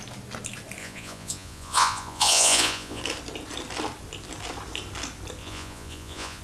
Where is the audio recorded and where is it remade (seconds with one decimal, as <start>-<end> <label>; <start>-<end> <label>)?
0.0-0.8 recorded; 0.8-3.0 remade; 3.0-5.4 recorded; 5.4-6.4 remade